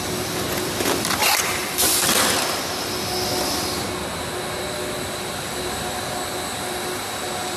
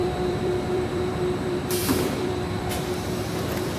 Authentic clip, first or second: first